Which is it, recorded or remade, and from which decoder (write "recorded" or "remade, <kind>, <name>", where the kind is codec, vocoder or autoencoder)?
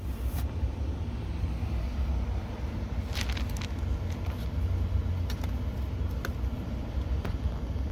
recorded